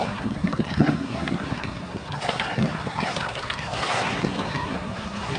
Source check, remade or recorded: remade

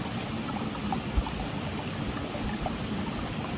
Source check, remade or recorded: recorded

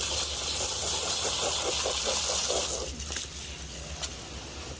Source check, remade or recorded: recorded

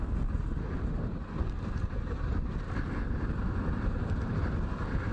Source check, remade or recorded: recorded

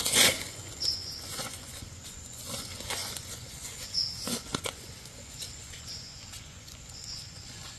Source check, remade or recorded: remade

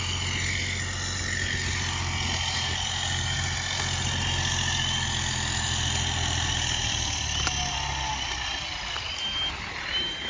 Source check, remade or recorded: recorded